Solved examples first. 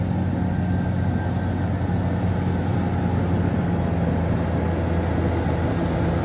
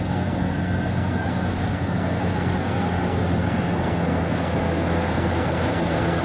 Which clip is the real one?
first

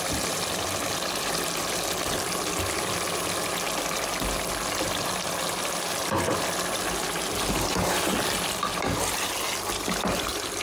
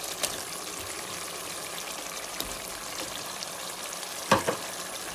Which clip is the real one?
first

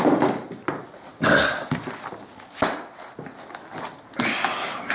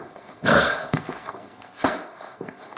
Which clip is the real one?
first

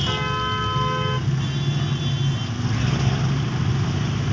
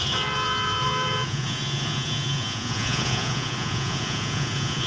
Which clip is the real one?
first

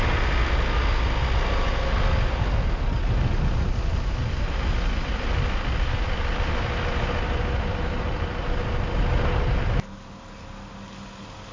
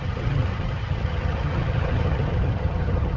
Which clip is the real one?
first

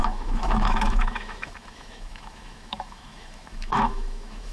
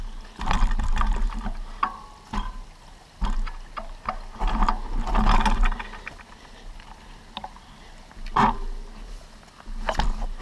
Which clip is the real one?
second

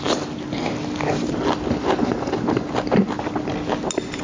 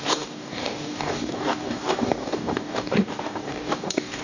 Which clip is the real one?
first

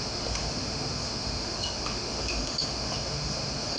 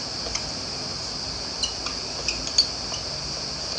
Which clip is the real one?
second